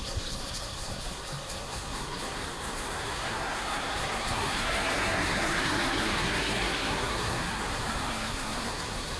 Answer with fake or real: fake